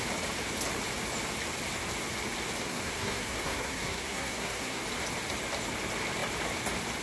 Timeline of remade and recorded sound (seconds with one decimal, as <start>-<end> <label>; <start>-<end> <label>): 0.0-2.6 recorded; 2.6-4.8 remade; 4.8-7.0 recorded